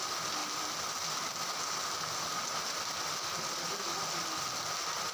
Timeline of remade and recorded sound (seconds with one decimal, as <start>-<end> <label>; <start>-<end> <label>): 0.0-5.1 recorded

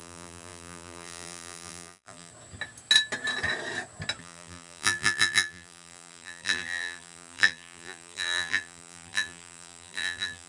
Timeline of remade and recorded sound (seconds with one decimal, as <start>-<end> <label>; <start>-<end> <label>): 0.0-2.3 remade; 2.3-4.2 recorded; 4.2-10.5 remade